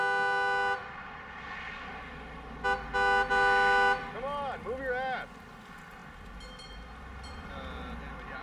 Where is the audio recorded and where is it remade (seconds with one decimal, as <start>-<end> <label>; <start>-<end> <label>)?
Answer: 0.0-8.4 recorded